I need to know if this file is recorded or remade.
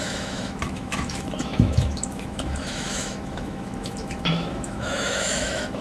remade